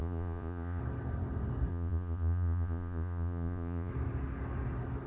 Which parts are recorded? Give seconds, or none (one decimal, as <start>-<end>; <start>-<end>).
0.8-1.7; 3.9-5.1

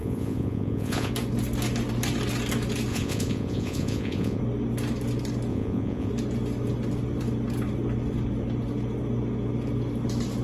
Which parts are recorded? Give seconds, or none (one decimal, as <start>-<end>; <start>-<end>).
1.1-2.9; 4.4-5.5; 6.1-10.4

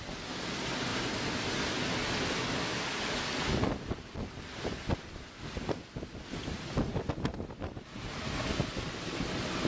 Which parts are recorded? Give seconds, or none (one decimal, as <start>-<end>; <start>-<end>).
0.0-0.9; 1.5-9.7

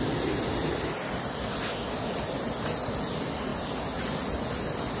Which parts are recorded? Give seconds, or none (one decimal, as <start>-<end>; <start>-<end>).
0.0-5.0

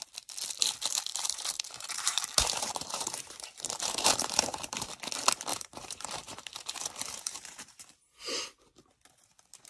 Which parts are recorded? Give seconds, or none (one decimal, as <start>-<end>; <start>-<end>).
0.0-1.1; 4.9-5.5; 8.2-9.7

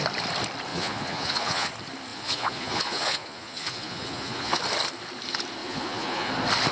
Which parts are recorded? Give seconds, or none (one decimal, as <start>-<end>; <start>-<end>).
0.0-0.7; 1.7-2.1; 4.6-5.6; 6.3-6.7

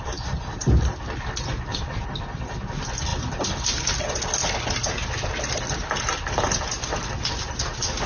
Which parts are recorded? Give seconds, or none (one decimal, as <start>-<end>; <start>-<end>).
0.0-8.1

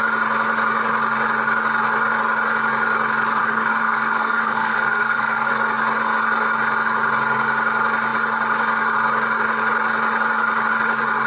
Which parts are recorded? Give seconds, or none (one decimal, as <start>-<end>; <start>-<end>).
0.0-3.4; 5.5-11.3